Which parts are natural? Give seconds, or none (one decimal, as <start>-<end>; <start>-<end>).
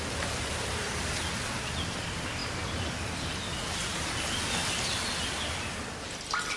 0.0-6.6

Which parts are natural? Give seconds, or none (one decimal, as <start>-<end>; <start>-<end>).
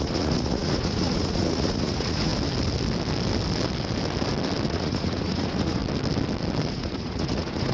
2.3-4.7; 5.8-6.7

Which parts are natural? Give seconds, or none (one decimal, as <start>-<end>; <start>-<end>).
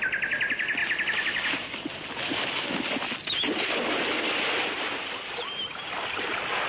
0.0-6.7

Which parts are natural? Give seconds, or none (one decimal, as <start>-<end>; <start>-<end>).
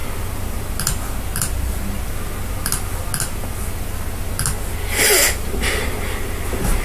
0.0-6.8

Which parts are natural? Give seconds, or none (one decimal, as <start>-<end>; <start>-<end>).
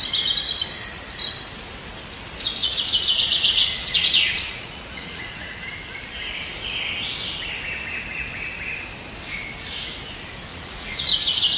0.0-2.6; 5.6-10.5; 11.1-11.6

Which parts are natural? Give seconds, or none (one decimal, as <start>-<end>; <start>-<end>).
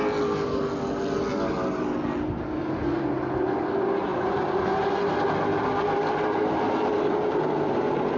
0.0-8.2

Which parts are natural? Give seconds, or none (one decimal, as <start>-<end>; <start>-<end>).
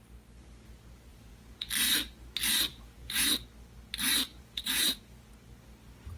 0.0-1.1; 1.7-2.7; 3.3-4.3; 5.3-6.2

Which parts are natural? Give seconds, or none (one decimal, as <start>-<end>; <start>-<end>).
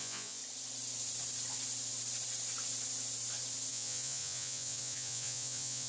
0.4-3.7